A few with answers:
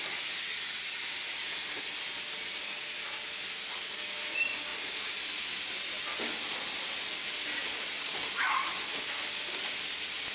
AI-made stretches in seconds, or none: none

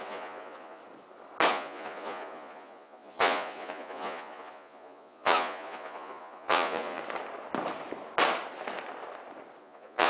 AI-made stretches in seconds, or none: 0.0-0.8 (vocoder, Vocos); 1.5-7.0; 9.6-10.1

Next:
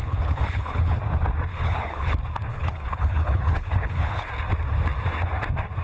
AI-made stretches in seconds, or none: 0.0-1.0 (codec, HILCodec); 1.5-2.1; 2.5-4.3

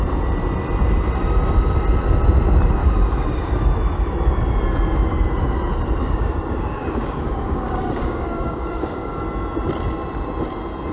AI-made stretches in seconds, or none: 2.8-4.4 (codec, DAC); 6.0-9.2

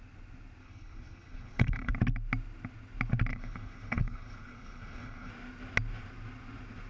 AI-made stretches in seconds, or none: 0.6-1.9 (codec, HILCodec); 3.3-5.3

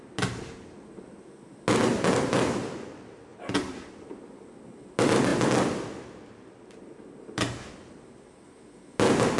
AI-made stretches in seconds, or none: none